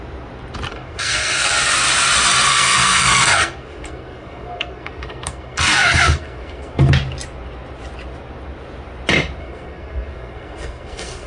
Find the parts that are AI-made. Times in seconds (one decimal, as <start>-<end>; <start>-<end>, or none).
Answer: 0.7-1.5; 2.5-6.9; 9.4-11.3